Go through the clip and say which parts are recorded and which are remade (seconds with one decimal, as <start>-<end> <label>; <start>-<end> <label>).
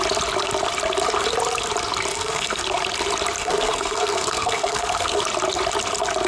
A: 0.0-2.1 recorded; 2.1-2.6 remade; 2.6-3.4 recorded; 3.4-5.2 remade; 5.2-6.3 recorded